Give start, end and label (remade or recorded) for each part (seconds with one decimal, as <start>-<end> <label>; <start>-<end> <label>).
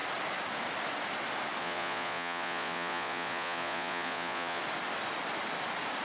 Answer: 0.0-1.6 recorded; 1.6-4.6 remade; 4.6-6.0 recorded